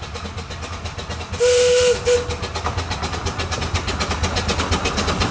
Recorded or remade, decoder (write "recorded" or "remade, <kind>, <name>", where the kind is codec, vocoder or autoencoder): recorded